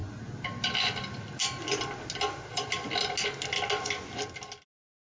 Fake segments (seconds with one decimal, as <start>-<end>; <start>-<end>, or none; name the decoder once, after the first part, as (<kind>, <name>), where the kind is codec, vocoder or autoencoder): none